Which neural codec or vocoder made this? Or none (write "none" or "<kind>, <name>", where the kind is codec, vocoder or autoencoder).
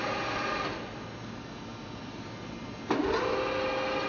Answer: none